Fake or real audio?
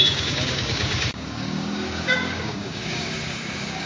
fake